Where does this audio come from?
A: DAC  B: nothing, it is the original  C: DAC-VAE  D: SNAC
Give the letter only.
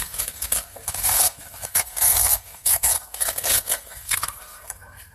D